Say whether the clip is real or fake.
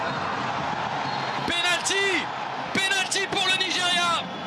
real